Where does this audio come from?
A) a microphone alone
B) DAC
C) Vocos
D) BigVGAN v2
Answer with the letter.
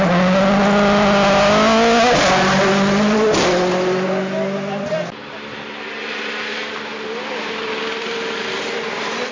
A